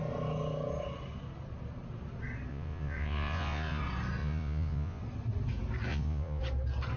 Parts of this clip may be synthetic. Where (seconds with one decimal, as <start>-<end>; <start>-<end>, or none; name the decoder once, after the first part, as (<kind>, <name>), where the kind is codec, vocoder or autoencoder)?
2.5-3.8 (vocoder, Vocos); 4.2-5.0; 5.9-6.4